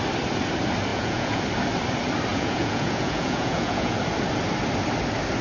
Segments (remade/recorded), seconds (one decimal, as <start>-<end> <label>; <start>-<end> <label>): 0.0-0.9 recorded; 0.9-1.4 remade; 1.4-2.3 recorded; 2.3-4.0 remade; 4.0-5.4 recorded